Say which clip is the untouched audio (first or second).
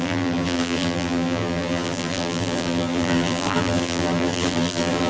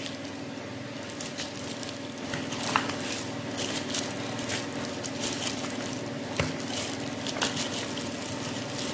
second